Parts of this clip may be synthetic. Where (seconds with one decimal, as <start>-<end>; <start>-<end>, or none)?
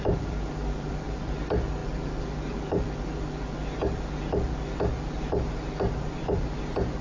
0.0-1.8; 6.0-7.0